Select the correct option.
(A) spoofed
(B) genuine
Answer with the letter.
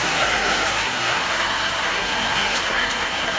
A